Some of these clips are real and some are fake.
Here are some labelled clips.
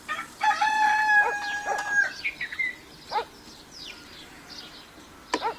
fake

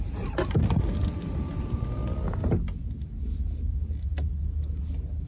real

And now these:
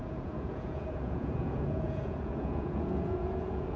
fake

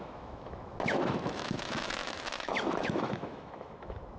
fake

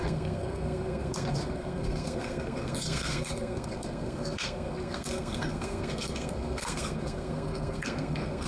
fake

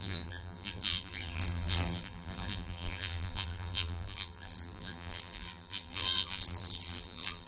fake